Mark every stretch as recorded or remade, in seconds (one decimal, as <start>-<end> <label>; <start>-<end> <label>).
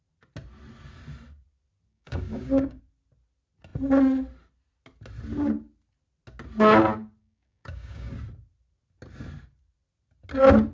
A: 0.0-1.9 recorded; 1.9-2.8 remade; 2.8-7.2 recorded; 7.2-8.1 remade; 8.1-10.7 recorded